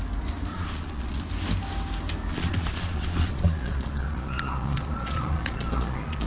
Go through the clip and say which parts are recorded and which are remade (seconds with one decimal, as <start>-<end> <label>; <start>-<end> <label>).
0.0-0.5 recorded; 0.5-1.2 remade; 1.2-2.3 recorded; 2.3-6.3 remade